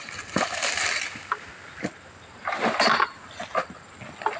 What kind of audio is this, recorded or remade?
recorded